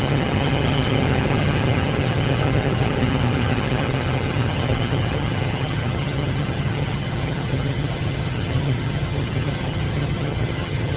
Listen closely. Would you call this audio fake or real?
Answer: fake